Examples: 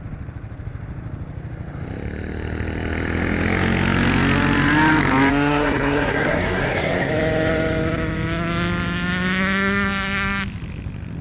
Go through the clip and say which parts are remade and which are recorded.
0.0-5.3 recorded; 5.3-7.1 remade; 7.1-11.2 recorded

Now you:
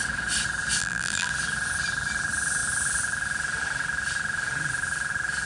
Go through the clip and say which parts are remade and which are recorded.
0.0-0.8 recorded; 0.8-1.3 remade; 1.3-5.5 recorded

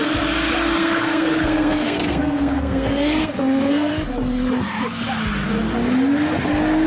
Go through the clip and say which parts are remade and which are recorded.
0.0-0.8 recorded; 0.8-3.9 remade; 3.9-6.9 recorded

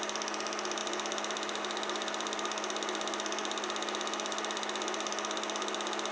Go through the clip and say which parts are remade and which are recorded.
0.0-6.1 recorded

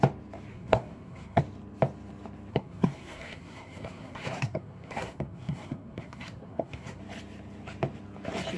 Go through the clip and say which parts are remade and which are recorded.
0.0-0.5 recorded; 0.5-1.4 remade; 1.4-2.5 recorded; 2.5-7.0 remade; 7.0-8.6 recorded